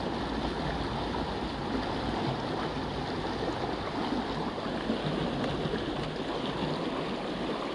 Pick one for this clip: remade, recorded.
recorded